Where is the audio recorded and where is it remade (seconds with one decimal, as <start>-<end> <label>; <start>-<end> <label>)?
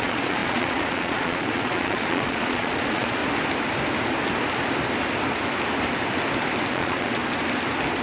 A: 0.0-3.2 remade; 3.2-6.7 recorded; 6.7-7.2 remade; 7.2-8.0 recorded